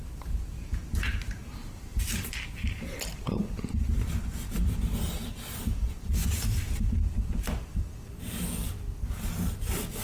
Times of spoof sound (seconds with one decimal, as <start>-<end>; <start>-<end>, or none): 0.0-10.0